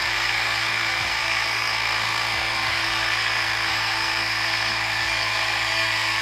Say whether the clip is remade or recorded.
remade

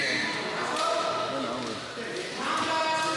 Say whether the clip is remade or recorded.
recorded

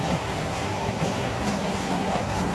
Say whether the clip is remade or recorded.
remade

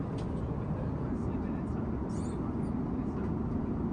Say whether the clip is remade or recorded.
recorded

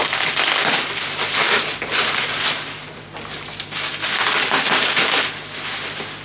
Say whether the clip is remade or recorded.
recorded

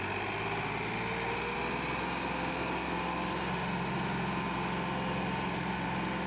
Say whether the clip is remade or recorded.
recorded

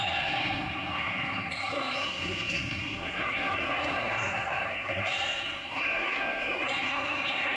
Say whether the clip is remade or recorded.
remade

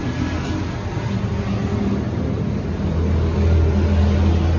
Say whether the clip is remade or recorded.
recorded